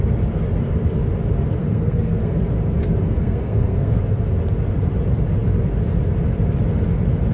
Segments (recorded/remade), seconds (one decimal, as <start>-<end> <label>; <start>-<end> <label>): 0.0-1.6 recorded; 1.6-2.4 remade; 2.4-2.8 recorded; 2.8-4.0 remade; 4.0-7.3 recorded